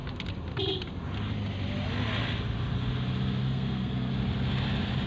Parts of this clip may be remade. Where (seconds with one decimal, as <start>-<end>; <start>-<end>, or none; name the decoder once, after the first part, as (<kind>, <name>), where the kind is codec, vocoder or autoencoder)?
3.4-4.1 (codec, SNAC)